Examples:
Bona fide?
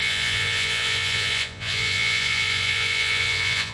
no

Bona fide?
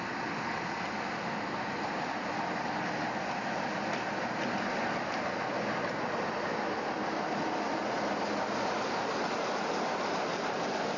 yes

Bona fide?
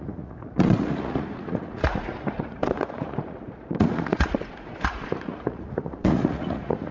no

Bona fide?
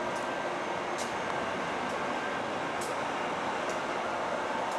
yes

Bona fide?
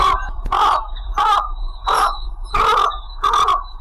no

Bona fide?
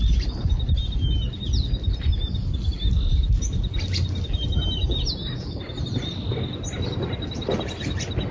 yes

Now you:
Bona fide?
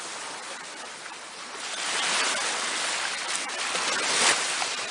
yes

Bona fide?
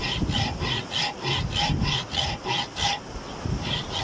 yes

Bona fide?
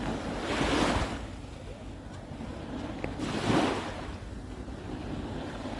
yes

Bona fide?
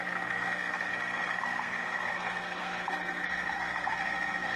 no